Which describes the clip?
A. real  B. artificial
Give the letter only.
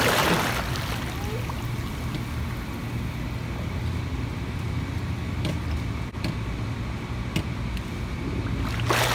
A